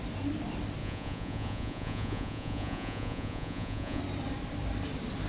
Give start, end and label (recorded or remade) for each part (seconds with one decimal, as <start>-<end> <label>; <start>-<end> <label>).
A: 0.0-0.8 recorded; 0.8-4.0 remade; 4.0-5.3 recorded